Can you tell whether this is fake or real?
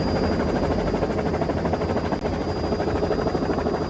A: real